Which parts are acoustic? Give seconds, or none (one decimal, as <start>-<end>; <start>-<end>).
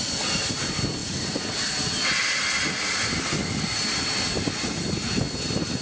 0.0-5.8